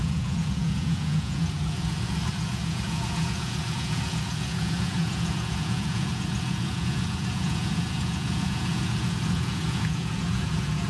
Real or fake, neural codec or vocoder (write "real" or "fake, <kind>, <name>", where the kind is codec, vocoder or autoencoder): fake, vocoder, Vocos